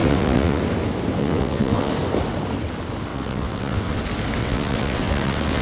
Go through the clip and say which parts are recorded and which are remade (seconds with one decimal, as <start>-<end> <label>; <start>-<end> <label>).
0.0-0.6 remade; 0.6-1.2 recorded; 1.2-1.9 remade; 1.9-3.1 recorded; 3.1-4.0 remade; 4.0-4.4 recorded; 4.4-5.6 remade